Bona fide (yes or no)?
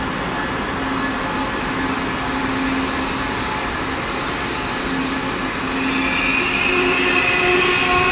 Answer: yes